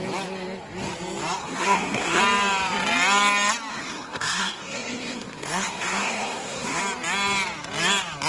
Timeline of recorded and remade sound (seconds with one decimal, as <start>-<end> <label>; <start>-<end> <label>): 0.0-1.4 recorded; 1.4-2.2 remade; 2.2-3.7 recorded; 3.7-6.8 remade; 6.8-8.3 recorded